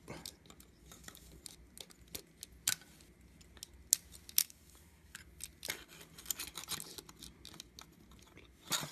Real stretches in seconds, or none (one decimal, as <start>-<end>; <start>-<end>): 0.0-0.8; 1.4-4.4; 5.2-8.9